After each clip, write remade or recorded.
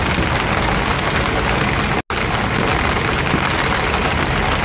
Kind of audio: recorded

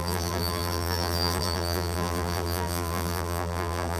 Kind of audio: remade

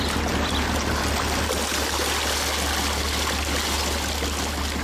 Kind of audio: recorded